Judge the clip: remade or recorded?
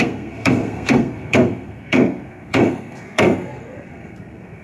remade